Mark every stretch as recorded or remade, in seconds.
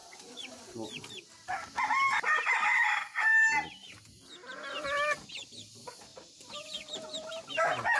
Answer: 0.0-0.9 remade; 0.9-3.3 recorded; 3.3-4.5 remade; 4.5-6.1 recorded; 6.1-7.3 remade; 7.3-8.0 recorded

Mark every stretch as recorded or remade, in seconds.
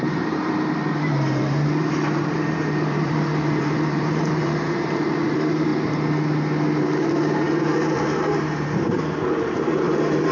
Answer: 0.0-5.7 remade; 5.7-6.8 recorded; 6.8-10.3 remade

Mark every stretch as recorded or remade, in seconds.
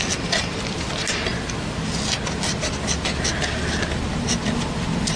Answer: 0.0-5.2 recorded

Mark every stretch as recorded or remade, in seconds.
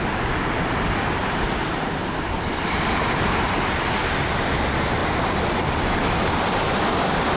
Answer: 0.0-1.7 recorded; 1.7-3.6 remade; 3.6-7.4 recorded